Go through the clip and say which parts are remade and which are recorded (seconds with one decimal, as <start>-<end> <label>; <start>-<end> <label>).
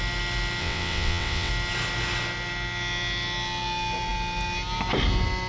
0.0-0.6 recorded; 0.6-1.5 remade; 1.5-5.5 recorded